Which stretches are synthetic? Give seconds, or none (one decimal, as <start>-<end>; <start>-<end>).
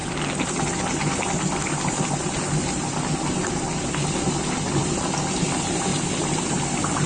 none